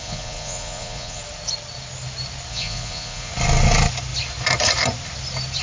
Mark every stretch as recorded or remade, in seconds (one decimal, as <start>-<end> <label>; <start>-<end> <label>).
0.0-1.2 remade; 1.2-2.5 recorded; 2.5-3.3 remade; 3.3-5.6 recorded